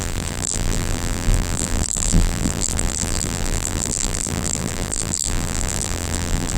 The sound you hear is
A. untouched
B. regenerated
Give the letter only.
B